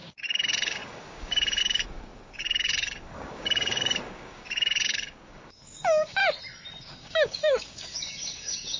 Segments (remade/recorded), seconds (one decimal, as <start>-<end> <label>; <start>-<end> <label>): 0.0-6.2 remade; 6.2-6.8 recorded; 6.8-8.8 remade